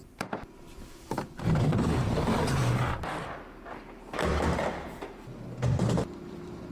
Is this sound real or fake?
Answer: fake